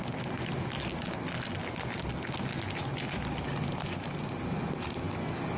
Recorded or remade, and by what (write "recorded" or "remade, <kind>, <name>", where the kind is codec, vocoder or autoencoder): recorded